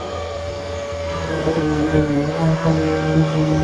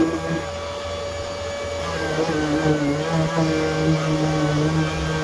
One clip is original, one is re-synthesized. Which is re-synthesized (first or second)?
first